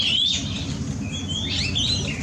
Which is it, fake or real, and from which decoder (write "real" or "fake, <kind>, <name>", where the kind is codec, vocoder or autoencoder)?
real